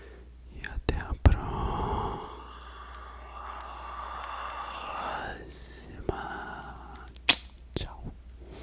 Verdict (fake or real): real